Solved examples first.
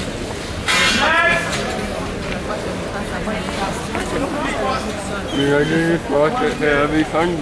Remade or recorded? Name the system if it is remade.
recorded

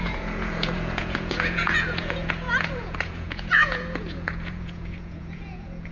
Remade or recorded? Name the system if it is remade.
remade, vocoder, Vocos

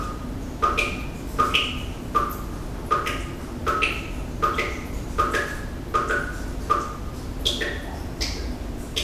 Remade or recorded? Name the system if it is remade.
recorded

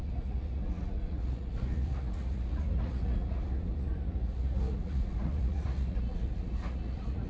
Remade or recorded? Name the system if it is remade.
remade, vocoder, Vocos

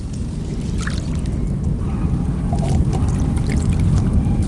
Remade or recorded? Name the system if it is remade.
recorded